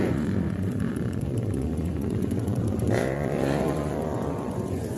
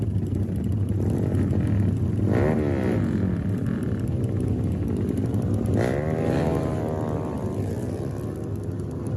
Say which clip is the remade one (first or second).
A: first